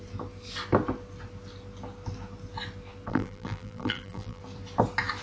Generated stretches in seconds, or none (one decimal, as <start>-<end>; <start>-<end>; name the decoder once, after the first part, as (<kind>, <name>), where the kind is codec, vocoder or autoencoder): 3.1-4.4 (vocoder, BigVGAN v2)